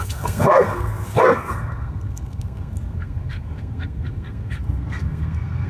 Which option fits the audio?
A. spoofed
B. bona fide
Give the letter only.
A